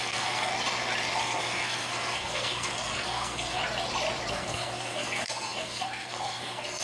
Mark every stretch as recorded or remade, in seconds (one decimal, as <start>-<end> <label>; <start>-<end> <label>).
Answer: 0.0-0.5 remade; 0.5-1.2 recorded; 1.2-3.6 remade; 3.6-4.3 recorded; 4.3-6.8 remade